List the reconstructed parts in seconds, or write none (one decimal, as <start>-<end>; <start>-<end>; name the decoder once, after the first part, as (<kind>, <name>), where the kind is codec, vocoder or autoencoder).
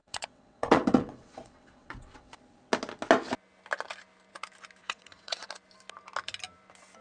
0.0-2.4 (vocoder, WaveNeXt); 4.8-5.5